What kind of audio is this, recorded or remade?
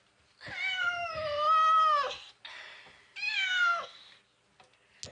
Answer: recorded